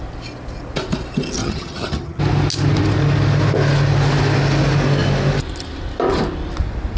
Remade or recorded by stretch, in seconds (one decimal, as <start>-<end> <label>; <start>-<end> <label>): 0.0-1.4 recorded; 1.4-2.2 remade; 2.2-7.0 recorded